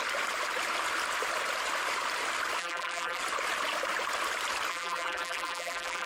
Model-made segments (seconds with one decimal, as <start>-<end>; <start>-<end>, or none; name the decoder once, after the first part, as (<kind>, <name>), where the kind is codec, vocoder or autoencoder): 2.6-3.2 (vocoder, BigVGAN v2); 4.7-6.1